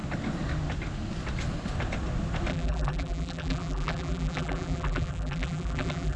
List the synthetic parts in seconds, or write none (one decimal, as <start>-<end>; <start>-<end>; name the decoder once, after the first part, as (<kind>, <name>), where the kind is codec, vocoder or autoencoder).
2.5-6.2 (vocoder, BigVGAN v2)